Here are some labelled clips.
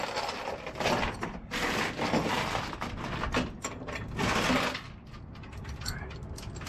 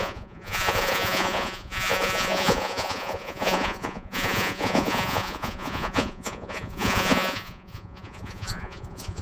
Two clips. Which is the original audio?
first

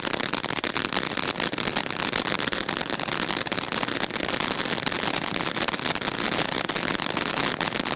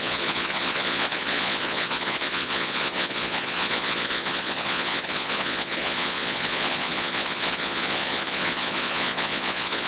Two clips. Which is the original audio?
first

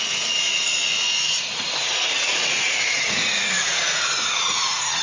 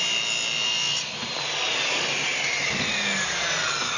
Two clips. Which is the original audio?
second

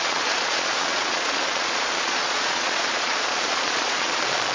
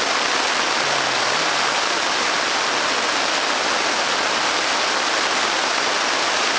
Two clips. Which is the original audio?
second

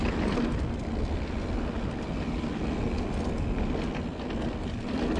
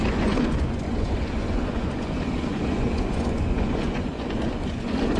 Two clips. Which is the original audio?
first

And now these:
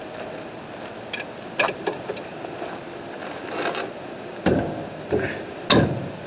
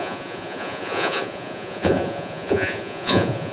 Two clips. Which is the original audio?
first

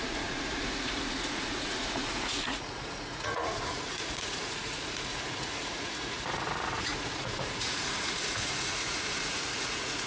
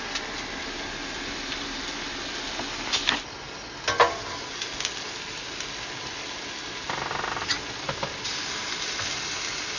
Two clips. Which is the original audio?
second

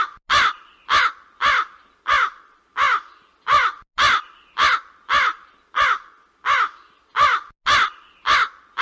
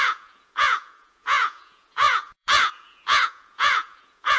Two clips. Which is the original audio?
first